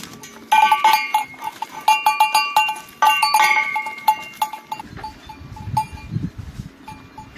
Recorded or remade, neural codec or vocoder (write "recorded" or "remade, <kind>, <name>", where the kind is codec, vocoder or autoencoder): recorded